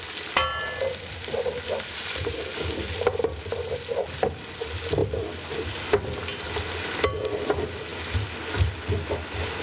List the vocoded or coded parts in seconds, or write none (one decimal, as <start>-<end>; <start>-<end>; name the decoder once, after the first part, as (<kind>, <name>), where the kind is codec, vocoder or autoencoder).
none